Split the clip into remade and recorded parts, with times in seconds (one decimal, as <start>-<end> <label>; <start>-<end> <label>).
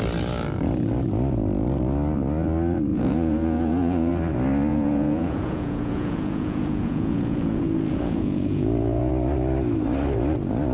0.0-2.9 recorded; 2.9-4.1 remade; 4.1-4.7 recorded; 4.7-9.1 remade; 9.1-10.7 recorded